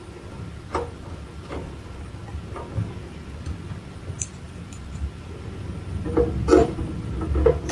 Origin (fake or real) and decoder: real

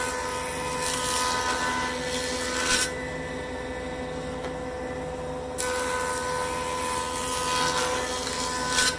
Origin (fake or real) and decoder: real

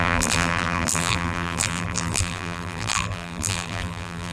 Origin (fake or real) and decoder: fake, vocoder, BigVGAN v2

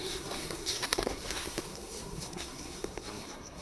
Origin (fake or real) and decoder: fake, codec, SNAC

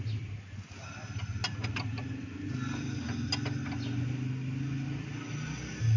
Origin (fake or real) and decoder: real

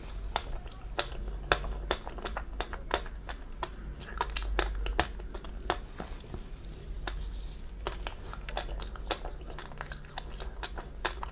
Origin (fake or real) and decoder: real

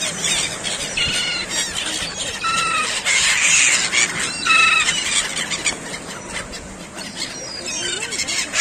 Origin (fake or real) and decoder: real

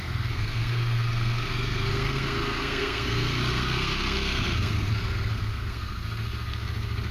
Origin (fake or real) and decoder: fake, codec, SNAC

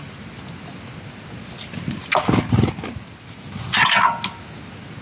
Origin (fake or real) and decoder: real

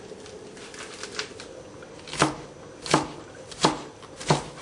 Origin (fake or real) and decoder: real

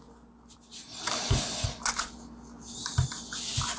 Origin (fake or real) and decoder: real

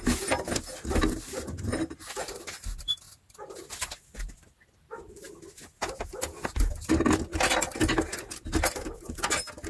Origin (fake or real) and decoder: real